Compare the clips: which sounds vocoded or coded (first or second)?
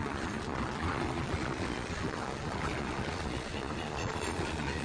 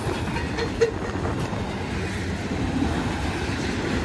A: first